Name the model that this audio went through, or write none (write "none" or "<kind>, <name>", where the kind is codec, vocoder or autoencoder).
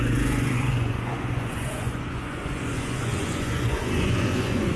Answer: vocoder, Vocos